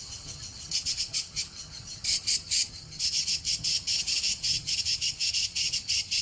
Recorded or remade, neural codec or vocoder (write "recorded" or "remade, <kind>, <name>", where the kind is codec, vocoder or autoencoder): remade, vocoder, HiFi-GAN